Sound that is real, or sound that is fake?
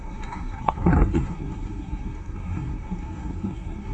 fake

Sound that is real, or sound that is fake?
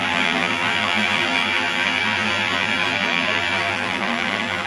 fake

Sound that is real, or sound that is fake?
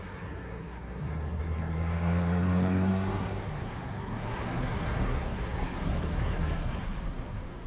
fake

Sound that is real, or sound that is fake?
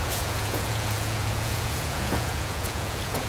fake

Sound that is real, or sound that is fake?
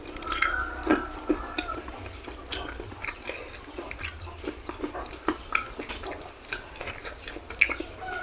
real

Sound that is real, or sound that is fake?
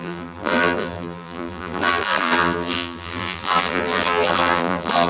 fake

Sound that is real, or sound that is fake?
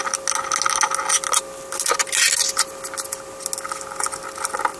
real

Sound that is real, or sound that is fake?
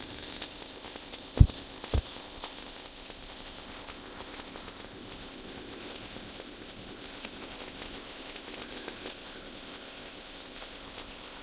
fake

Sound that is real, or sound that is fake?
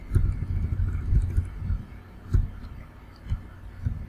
real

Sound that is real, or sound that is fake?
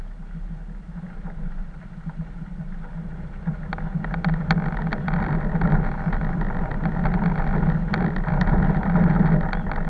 real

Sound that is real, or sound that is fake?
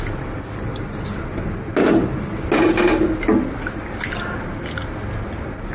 real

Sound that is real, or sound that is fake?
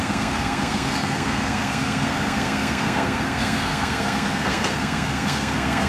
fake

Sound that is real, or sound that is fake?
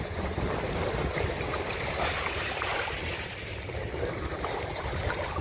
fake